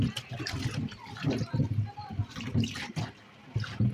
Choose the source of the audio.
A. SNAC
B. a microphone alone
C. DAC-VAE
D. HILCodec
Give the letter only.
B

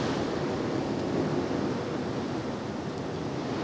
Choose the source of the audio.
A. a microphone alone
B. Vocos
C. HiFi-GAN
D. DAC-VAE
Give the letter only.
A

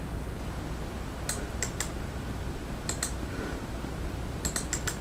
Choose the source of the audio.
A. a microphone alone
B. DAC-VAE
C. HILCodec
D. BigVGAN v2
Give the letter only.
A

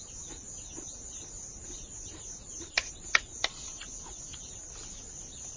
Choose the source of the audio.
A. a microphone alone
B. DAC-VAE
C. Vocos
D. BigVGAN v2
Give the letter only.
A